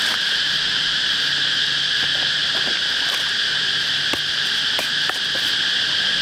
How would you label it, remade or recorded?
recorded